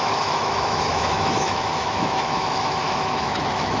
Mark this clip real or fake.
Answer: fake